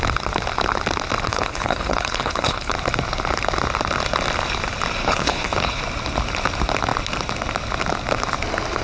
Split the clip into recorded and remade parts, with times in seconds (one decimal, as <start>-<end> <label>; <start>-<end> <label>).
0.0-1.3 recorded; 1.3-2.7 remade; 2.7-5.0 recorded; 5.0-5.8 remade; 5.8-8.8 recorded